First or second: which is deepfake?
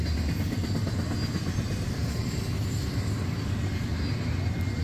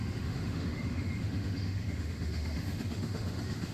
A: second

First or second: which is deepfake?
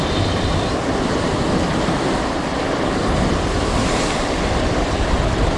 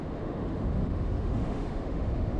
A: second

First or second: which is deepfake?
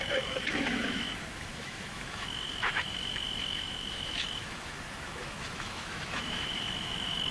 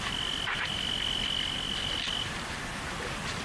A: first